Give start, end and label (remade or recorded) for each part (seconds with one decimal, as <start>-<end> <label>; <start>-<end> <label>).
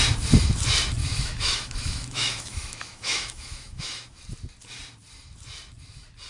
0.0-1.0 recorded; 1.0-4.2 remade; 4.2-6.3 recorded